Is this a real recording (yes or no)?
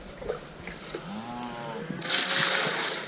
yes